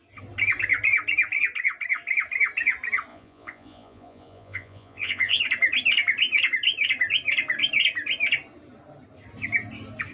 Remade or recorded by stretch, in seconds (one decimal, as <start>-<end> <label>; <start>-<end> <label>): 0.0-3.1 recorded; 3.1-5.4 remade; 5.4-10.1 recorded